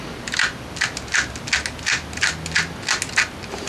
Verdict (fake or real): real